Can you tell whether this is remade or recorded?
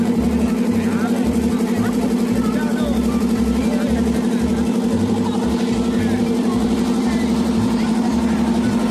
remade